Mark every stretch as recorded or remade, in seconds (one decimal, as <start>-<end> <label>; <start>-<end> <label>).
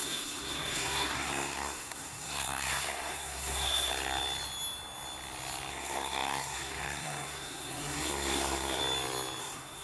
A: 0.0-3.9 remade; 3.9-5.7 recorded; 5.7-8.8 remade; 8.8-9.4 recorded; 9.4-9.8 remade